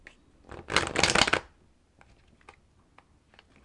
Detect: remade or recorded recorded